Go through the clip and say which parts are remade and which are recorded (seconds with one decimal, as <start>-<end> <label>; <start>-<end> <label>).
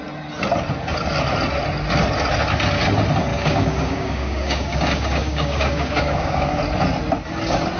0.0-3.3 recorded; 3.3-6.6 remade; 6.6-7.8 recorded